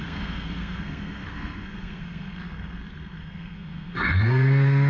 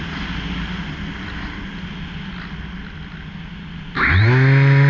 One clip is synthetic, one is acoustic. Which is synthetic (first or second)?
first